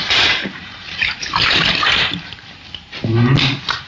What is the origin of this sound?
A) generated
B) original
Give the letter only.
A